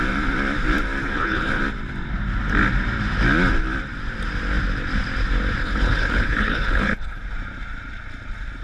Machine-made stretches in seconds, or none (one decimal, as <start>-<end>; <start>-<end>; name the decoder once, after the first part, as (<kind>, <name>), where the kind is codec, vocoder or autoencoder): 1.0-1.6 (codec, HILCodec); 5.6-7.2